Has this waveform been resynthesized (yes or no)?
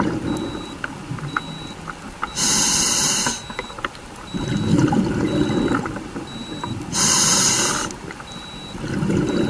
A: no